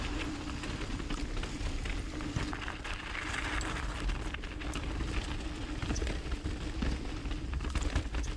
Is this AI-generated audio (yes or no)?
no